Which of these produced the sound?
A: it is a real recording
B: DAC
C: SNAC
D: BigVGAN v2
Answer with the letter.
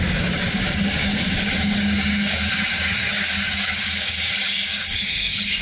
B